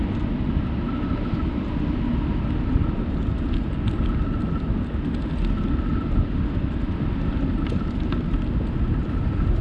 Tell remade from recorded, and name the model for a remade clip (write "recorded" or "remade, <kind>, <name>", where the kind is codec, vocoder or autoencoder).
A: recorded